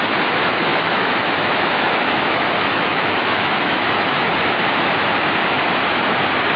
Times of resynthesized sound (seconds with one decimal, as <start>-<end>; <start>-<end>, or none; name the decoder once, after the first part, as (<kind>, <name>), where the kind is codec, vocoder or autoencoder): 0.7-4.3 (autoencoder, DAC-VAE)

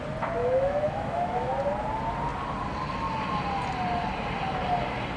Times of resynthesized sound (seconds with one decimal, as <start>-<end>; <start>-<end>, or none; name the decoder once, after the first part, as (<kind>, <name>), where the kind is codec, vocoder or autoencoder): 0.4-1.5 (autoencoder, DAC-VAE)

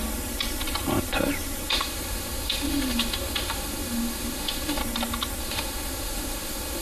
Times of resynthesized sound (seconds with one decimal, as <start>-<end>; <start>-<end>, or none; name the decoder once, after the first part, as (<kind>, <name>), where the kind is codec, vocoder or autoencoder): 1.7-4.8 (autoencoder, DAC-VAE); 5.4-6.8

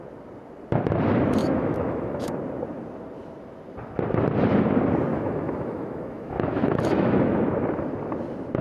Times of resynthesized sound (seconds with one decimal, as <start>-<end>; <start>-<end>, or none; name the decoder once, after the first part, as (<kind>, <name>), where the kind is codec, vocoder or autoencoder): 1.4-2.3 (autoencoder, DAC-VAE); 5.1-7.4

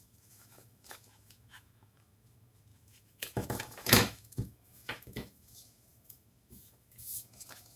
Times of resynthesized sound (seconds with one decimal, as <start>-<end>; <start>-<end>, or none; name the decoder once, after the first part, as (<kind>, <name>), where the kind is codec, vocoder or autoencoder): 0.0-7.8 (autoencoder, DAC-VAE)

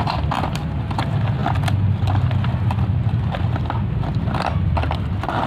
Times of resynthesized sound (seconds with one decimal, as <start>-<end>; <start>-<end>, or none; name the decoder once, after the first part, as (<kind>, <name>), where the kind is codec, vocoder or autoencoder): none

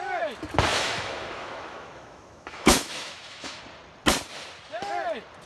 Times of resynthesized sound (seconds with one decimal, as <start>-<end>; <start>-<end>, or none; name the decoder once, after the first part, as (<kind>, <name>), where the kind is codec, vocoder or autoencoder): 0.7-3.6 (autoencoder, DAC-VAE)